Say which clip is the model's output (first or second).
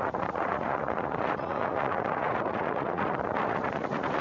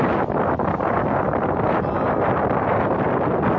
first